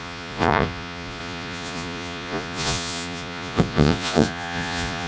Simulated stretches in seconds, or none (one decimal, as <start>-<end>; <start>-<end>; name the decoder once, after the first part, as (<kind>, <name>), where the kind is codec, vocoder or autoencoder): 0.0-5.1 (vocoder, Vocos)